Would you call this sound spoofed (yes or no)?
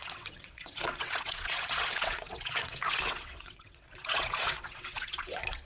yes